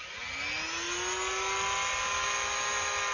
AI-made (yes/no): no